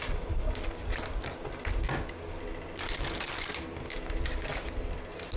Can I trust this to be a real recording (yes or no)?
yes